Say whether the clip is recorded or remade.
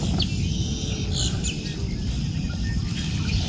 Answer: recorded